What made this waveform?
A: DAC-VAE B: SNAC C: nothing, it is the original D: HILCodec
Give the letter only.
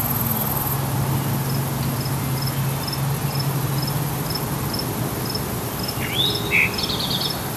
C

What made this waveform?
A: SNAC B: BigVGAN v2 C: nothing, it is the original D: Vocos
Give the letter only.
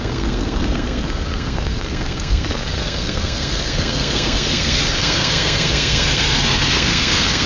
A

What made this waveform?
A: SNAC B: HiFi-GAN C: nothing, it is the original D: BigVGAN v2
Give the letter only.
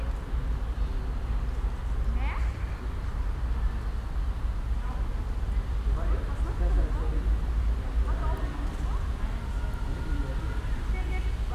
C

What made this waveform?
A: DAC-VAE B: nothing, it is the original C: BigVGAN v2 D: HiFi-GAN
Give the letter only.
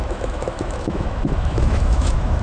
A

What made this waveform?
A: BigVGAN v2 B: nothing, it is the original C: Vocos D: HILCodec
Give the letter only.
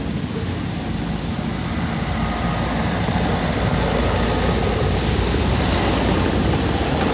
B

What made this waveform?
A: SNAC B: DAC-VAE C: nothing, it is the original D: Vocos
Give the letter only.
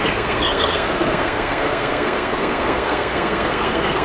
A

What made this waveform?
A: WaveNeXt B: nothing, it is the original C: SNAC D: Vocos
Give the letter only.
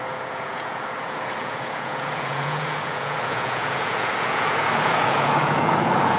D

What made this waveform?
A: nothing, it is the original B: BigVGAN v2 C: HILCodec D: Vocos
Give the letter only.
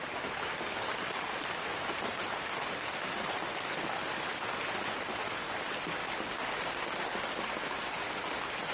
A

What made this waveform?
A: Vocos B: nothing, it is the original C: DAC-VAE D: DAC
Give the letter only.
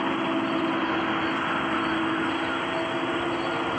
B